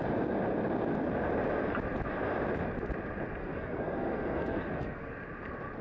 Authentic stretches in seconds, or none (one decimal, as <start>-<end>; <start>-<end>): 0.0-3.4; 5.1-5.8